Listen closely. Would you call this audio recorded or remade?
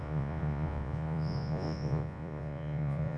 remade